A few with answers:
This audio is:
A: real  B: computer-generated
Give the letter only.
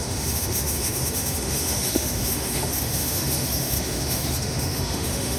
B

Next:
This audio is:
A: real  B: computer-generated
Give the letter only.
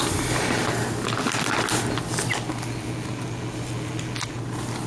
A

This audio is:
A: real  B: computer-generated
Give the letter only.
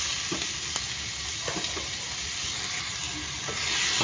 A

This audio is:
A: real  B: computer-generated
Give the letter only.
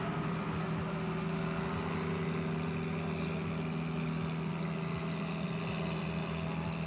A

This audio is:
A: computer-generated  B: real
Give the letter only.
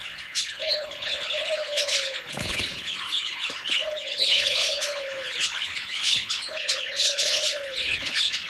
A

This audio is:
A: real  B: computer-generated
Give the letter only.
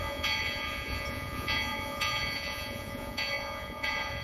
B